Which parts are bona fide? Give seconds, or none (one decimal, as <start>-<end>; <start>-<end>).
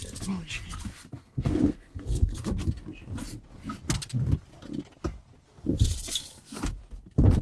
0.0-1.2; 2.3-7.4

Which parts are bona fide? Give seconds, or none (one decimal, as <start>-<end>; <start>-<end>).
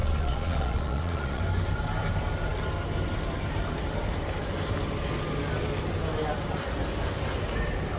1.4-8.0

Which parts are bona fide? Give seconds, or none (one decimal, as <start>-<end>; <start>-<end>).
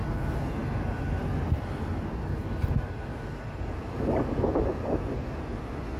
0.0-6.0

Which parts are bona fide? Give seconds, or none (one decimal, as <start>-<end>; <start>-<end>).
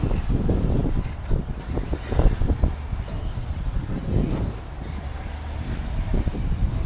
0.0-6.9